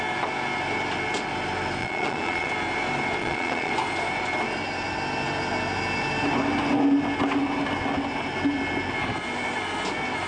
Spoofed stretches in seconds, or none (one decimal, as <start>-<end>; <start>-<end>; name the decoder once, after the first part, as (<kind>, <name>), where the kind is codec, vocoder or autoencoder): 1.8-2.5 (vocoder, Vocos); 3.2-3.7

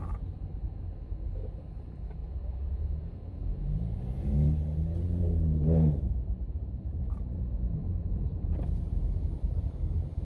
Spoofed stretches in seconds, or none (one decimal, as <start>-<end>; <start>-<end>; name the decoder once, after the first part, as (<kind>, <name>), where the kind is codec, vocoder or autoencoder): 2.2-6.1 (vocoder, Vocos)

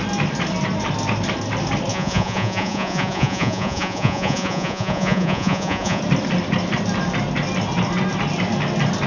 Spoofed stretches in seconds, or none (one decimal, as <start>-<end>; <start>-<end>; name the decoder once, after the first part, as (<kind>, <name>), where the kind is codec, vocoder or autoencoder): 1.9-6.0 (vocoder, Vocos)